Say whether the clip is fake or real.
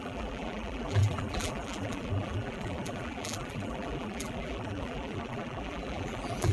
fake